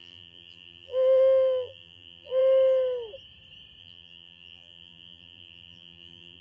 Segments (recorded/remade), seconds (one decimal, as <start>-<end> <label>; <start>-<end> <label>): 0.0-2.4 remade; 2.4-3.8 recorded; 3.8-6.4 remade